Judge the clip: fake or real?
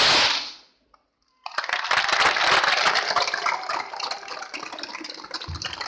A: real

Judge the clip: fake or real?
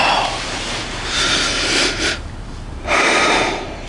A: fake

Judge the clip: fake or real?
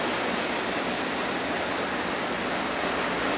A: real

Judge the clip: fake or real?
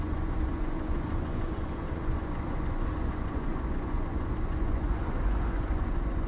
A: fake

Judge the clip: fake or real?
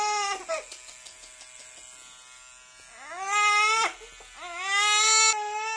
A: real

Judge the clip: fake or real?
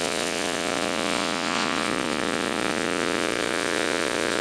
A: fake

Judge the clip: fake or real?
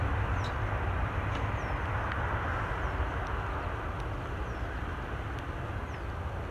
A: real